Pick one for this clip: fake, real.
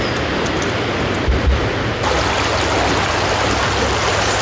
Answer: real